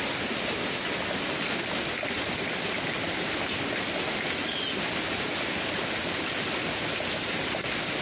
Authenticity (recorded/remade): recorded